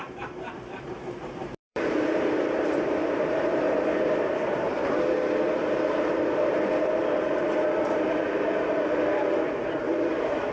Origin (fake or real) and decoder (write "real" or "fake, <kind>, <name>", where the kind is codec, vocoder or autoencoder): fake, vocoder, BigVGAN v2